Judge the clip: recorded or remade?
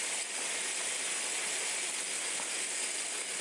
recorded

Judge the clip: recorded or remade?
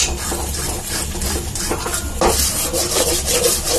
recorded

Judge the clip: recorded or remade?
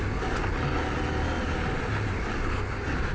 recorded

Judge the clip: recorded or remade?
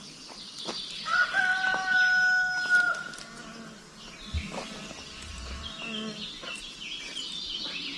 recorded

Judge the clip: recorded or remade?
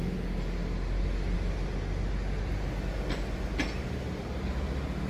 recorded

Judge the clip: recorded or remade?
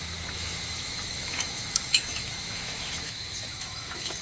remade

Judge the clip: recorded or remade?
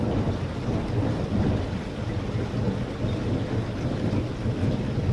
recorded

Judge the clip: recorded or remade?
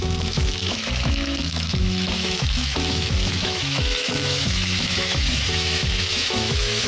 remade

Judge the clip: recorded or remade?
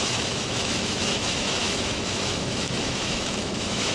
remade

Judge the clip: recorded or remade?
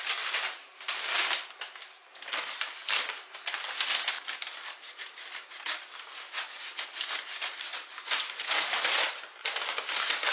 recorded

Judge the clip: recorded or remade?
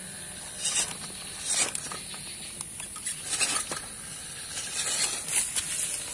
recorded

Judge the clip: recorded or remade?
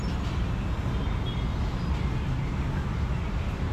recorded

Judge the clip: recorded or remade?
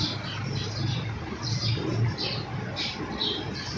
recorded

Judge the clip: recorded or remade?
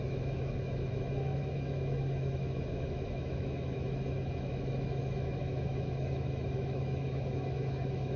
remade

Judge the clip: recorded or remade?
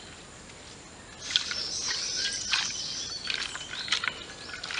recorded